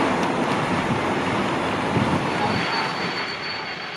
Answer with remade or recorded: recorded